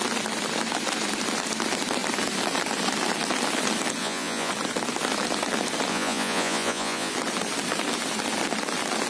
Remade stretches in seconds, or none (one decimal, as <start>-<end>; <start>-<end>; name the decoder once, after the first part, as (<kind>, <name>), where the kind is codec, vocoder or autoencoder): 4.0-4.5 (vocoder, Vocos); 5.9-7.1